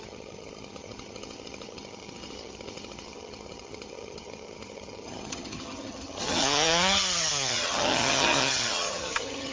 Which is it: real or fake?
fake